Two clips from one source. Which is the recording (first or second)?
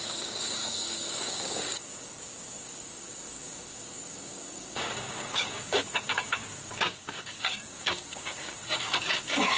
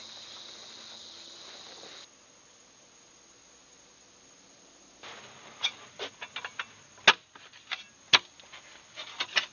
second